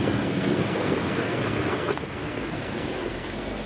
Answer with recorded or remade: remade